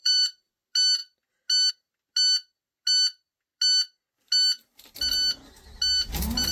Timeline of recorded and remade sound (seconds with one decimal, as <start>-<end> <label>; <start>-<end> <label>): 0.0-0.5 remade; 0.5-6.5 recorded